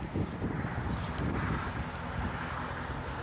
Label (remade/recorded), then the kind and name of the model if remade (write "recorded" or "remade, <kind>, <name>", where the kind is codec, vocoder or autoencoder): recorded